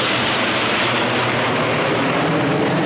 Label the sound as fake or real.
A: real